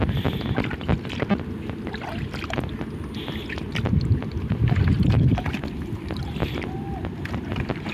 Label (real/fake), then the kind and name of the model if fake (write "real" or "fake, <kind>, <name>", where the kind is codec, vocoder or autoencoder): real